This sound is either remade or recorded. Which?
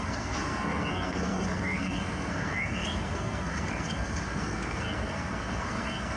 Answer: remade